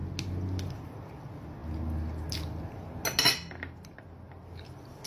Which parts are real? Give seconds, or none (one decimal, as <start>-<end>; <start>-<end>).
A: 0.0-5.1

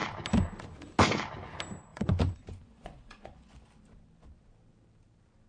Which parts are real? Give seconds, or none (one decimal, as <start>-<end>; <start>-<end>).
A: 0.0-1.9; 3.6-5.5

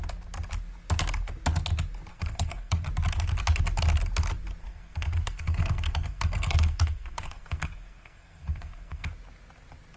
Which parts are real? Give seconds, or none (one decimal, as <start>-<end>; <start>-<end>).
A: 0.0-2.1; 2.9-4.6; 9.1-10.0

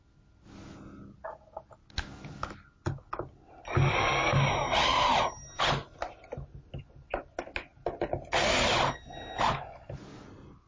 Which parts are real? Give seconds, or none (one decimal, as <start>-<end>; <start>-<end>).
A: 0.0-10.7

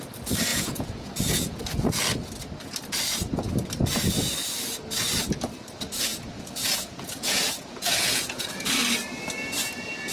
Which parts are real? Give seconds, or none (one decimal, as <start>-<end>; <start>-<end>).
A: 0.0-0.5; 1.6-6.1; 8.8-10.1

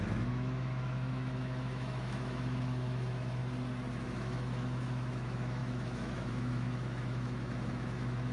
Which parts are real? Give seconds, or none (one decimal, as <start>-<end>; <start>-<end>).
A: 3.4-3.9